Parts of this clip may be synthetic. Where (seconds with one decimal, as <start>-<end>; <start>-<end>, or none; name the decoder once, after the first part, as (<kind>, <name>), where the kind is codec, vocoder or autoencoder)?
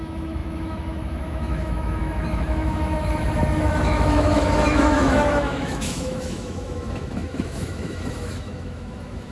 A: 0.0-9.3 (autoencoder, DAC-VAE)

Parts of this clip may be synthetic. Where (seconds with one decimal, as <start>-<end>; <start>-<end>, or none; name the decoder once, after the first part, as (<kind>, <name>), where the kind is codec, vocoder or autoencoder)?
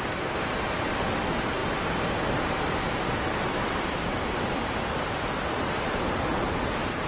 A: 1.6-5.6 (vocoder, BigVGAN v2)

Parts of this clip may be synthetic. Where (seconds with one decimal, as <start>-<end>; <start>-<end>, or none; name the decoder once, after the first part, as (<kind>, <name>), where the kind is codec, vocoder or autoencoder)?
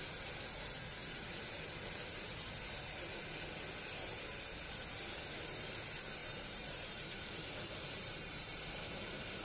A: 1.0-3.2 (vocoder, BigVGAN v2); 6.2-7.3; 8.0-8.7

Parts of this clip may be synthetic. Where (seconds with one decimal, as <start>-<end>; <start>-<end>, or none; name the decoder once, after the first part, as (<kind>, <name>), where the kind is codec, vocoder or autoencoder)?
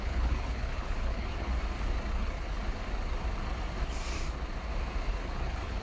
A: 0.0-1.5 (codec, HILCodec); 2.1-2.6; 5.1-5.8